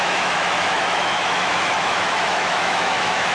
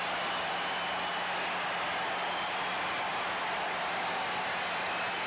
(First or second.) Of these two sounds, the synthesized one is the first